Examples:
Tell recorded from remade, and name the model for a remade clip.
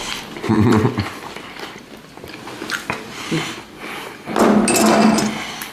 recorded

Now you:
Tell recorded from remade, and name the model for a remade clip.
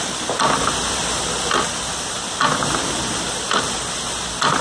recorded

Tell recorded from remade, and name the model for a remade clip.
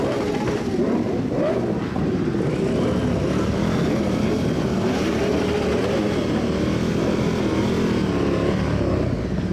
recorded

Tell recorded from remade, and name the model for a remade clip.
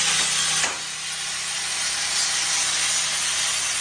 recorded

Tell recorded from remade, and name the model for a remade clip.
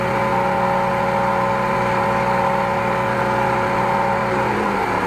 recorded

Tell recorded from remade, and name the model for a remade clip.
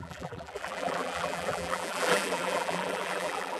remade, vocoder, BigVGAN v2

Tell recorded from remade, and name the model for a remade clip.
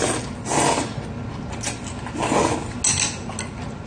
recorded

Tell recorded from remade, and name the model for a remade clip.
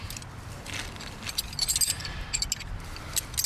recorded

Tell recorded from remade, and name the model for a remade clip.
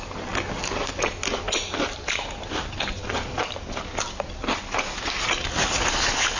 recorded